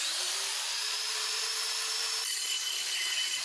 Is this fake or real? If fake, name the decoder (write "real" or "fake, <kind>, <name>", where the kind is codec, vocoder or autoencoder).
fake, vocoder, BigVGAN v2